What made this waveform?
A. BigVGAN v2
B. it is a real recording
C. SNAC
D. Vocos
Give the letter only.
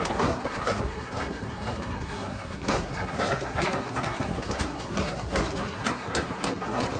C